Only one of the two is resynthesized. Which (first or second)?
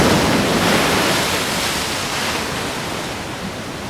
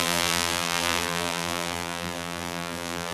second